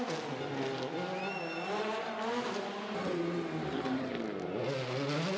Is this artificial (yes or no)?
no